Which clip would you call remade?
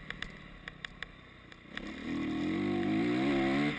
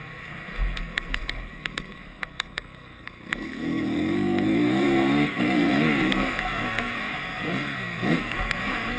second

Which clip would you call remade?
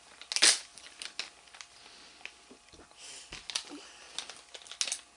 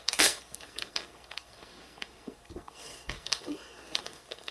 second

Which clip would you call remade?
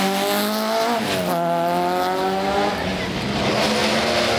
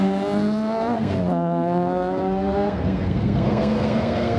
second